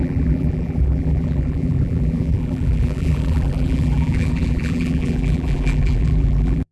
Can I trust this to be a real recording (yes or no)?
no